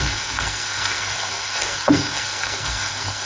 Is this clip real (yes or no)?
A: no